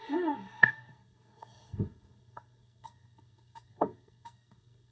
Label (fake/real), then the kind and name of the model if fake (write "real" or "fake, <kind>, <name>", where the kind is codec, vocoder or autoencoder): fake, codec, SNAC